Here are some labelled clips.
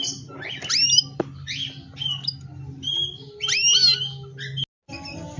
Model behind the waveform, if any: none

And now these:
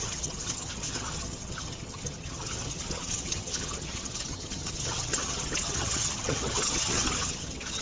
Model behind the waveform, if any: vocoder, HiFi-GAN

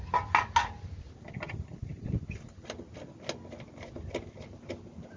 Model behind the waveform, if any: none